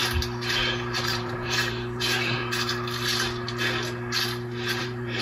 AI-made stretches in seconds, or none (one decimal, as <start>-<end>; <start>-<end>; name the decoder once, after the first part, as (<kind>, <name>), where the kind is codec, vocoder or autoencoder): 1.0-2.4 (vocoder, BigVGAN v2); 4.8-5.2